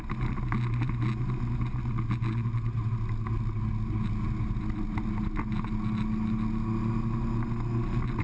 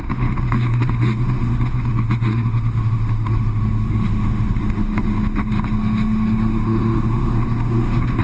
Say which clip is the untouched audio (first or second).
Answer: first